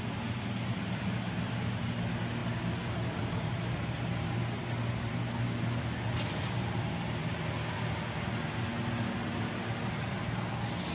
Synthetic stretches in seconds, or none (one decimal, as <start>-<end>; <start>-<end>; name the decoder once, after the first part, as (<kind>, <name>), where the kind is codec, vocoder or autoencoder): none